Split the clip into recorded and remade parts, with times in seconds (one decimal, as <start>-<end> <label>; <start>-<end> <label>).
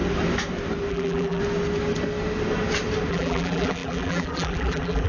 0.0-0.9 recorded; 0.9-1.4 remade; 1.4-3.1 recorded; 3.1-5.1 remade